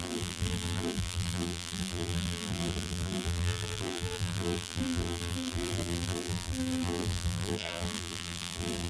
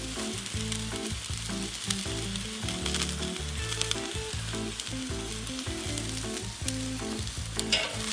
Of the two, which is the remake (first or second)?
first